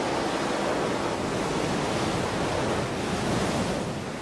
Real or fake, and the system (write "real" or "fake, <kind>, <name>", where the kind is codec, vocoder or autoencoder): real